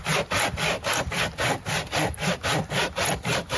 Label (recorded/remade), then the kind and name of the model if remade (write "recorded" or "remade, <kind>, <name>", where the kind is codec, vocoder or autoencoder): recorded